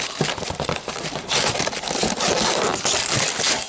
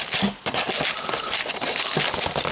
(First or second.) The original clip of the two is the second